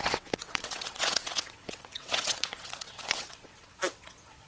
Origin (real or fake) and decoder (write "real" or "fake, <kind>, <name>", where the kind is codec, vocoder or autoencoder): fake, vocoder, WaveNeXt